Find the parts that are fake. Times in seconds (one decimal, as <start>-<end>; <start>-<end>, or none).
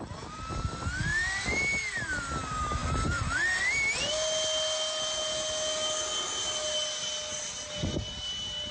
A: 1.1-2.2; 2.8-3.6; 7.3-8.7